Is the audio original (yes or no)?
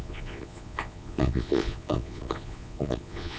no